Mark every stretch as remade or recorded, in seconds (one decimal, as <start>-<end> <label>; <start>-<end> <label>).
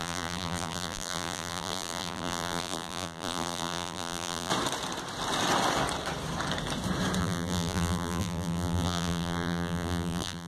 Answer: 0.0-4.5 remade; 4.5-7.2 recorded; 7.2-10.5 remade